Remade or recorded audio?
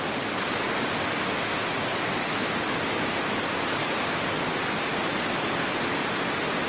recorded